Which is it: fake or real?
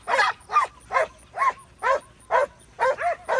real